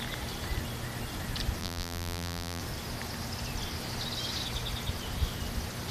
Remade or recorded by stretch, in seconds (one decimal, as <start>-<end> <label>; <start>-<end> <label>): 0.0-1.6 recorded; 1.6-2.6 remade; 2.6-5.9 recorded